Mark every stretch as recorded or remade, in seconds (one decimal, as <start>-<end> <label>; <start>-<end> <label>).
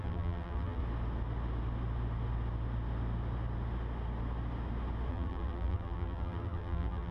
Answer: 0.0-0.8 remade; 0.8-5.1 recorded; 5.1-7.1 remade